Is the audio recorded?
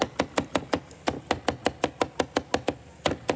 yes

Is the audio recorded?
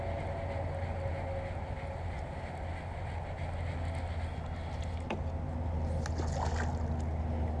yes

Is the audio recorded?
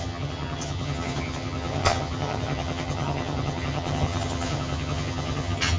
no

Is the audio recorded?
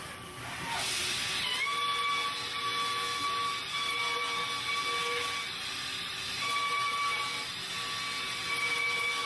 yes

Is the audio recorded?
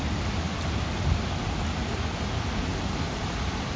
yes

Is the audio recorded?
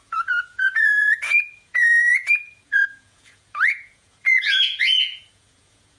no